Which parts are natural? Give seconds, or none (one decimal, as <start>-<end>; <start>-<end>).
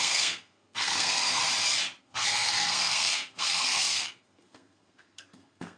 1.4-2.0